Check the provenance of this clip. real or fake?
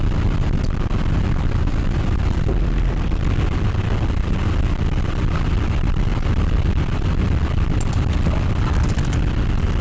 real